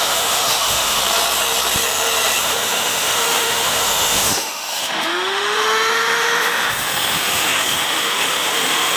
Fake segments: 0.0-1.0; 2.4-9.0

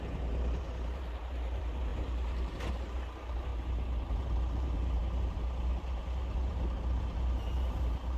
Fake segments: 0.0-3.5; 4.1-8.2

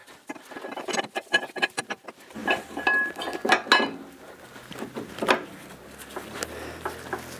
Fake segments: none

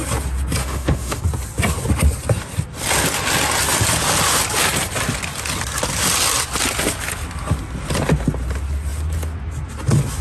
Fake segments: 0.6-1.2

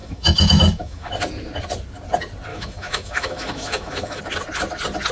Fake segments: 0.0-1.1; 2.5-4.2